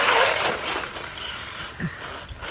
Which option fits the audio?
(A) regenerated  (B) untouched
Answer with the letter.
B